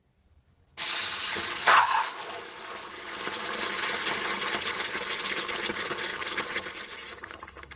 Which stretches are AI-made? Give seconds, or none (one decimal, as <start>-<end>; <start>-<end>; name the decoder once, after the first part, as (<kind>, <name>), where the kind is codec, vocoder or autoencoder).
1.6-2.2 (codec, SNAC)